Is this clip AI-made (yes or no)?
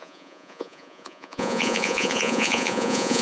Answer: yes